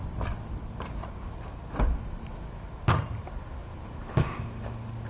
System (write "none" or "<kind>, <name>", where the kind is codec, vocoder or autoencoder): none